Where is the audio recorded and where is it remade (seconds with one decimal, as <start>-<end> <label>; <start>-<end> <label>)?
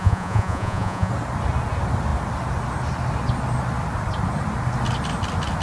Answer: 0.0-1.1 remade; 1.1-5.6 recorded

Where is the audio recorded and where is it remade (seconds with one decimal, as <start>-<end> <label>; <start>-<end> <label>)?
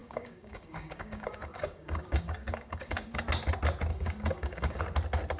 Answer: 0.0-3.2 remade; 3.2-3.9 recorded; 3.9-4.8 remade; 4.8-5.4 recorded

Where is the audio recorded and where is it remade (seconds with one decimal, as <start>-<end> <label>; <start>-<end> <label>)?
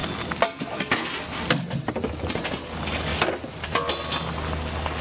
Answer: 0.0-1.2 remade; 1.2-5.0 recorded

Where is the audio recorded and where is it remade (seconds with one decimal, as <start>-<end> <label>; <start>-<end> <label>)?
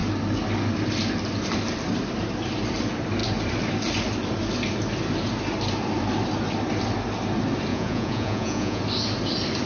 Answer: 0.0-7.7 recorded; 7.7-8.8 remade; 8.8-9.7 recorded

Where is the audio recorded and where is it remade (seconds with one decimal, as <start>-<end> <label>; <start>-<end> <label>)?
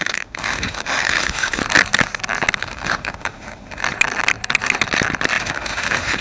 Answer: 0.0-1.6 remade; 1.6-2.6 recorded; 2.6-3.8 remade; 3.8-5.4 recorded; 5.4-6.2 remade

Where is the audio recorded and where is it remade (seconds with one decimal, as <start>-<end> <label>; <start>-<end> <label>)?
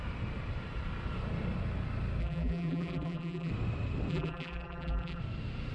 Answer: 0.0-2.2 recorded; 2.2-3.5 remade; 3.5-4.1 recorded; 4.1-5.2 remade; 5.2-5.7 recorded